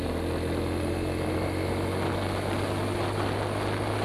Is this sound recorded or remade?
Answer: recorded